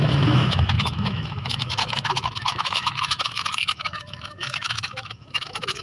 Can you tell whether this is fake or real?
fake